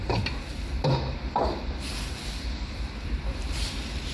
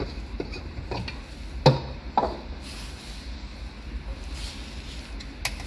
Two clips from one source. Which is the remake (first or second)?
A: first